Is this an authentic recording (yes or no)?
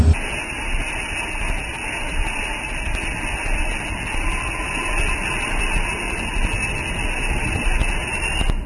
yes